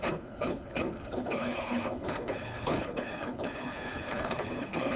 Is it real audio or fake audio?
fake